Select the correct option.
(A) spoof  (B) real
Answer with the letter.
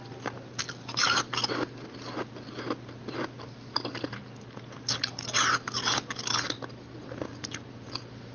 B